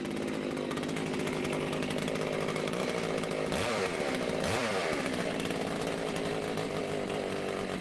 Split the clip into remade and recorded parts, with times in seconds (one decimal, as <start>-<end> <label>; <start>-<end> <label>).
0.0-4.6 recorded; 4.6-6.8 remade; 6.8-7.8 recorded